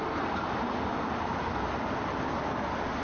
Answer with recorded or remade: recorded